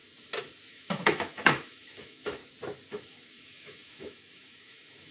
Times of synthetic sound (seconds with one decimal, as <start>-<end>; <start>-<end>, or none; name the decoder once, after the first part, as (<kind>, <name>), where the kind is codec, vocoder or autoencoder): 0.7-2.4 (autoencoder, DAC-VAE); 2.9-5.1